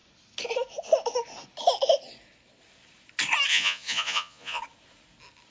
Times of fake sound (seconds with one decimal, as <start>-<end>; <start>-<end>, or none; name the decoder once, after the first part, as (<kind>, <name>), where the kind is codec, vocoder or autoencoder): 3.5-4.6 (vocoder, Vocos)